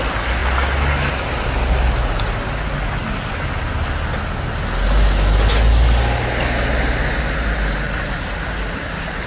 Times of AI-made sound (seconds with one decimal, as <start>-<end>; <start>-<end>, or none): none